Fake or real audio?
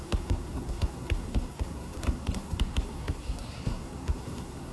fake